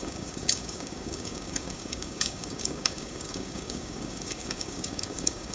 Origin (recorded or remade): remade